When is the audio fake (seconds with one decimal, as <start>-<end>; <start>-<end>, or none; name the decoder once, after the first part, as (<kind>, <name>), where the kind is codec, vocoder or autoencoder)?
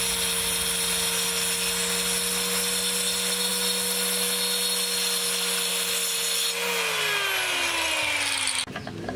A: none